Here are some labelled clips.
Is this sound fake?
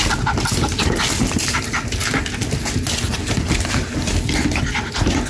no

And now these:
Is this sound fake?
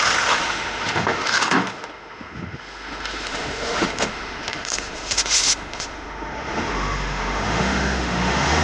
yes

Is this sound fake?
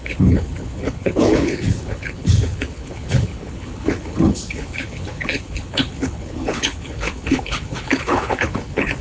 yes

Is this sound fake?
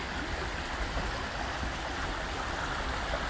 no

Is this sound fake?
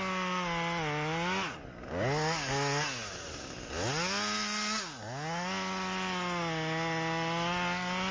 no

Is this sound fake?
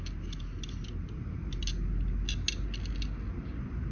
no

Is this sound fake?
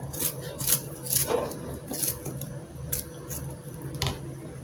no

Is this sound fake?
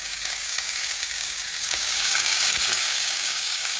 yes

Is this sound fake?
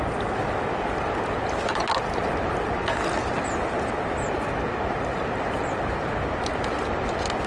no